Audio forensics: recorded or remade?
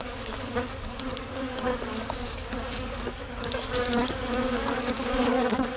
remade